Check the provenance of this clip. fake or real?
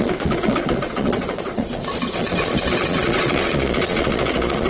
fake